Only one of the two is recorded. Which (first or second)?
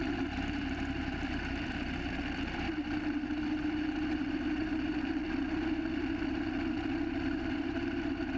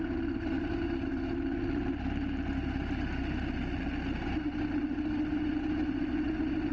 second